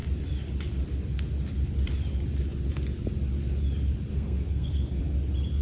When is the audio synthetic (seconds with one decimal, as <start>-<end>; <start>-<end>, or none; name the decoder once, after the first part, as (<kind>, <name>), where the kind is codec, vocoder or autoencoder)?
4.1-5.0 (codec, SNAC)